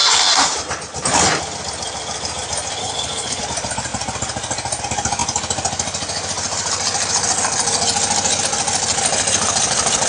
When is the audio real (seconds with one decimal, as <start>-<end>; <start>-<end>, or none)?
0.0-2.8; 3.4-10.1